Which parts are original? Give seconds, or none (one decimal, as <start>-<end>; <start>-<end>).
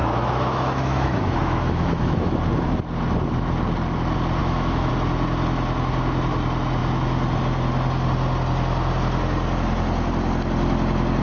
2.4-4.4; 4.9-11.2